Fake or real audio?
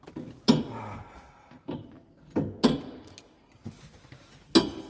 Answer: real